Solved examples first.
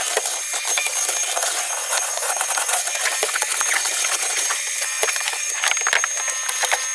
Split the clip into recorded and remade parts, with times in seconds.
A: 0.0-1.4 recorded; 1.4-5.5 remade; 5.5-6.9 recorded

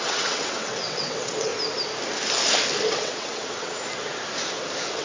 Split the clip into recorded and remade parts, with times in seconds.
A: 0.0-1.5 remade; 1.5-2.9 recorded; 2.9-3.8 remade; 3.8-5.0 recorded

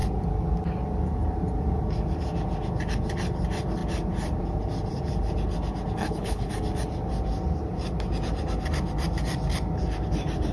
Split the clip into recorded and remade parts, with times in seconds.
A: 0.0-6.0 recorded; 6.0-6.5 remade; 6.5-10.5 recorded

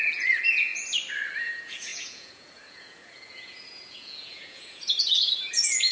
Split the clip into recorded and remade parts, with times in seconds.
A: 0.0-0.7 remade; 0.7-1.4 recorded; 1.4-5.9 remade

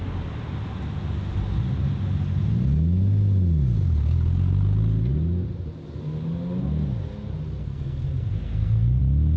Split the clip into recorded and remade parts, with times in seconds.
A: 0.0-7.6 recorded; 7.6-9.0 remade; 9.0-9.4 recorded

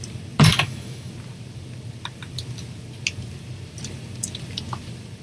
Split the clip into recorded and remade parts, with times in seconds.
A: 0.0-0.5 recorded; 0.5-1.1 remade; 1.1-5.2 recorded